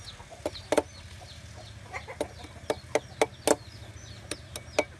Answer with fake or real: real